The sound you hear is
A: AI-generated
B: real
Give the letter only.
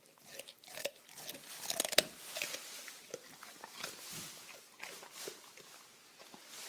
B